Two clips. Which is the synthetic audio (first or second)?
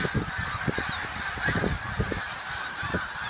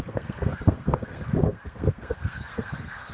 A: second